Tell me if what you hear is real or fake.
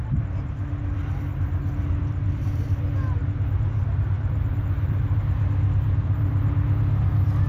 real